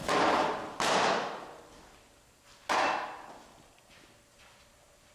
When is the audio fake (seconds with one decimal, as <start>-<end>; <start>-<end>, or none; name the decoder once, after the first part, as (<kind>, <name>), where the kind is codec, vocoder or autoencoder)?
none